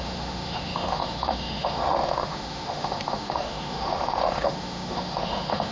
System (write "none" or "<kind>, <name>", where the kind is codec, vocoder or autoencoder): autoencoder, DAC-VAE